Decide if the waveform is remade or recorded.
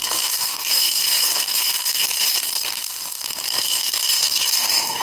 remade